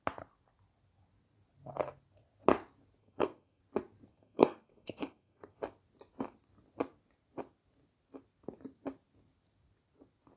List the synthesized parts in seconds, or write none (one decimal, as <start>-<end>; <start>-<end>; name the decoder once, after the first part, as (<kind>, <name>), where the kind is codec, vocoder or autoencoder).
3.0-3.6 (codec, SNAC); 4.1-5.6